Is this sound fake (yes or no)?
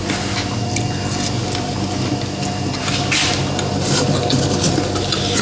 no